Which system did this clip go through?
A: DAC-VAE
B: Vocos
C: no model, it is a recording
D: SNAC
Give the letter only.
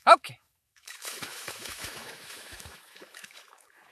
A